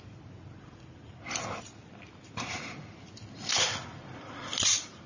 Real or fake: real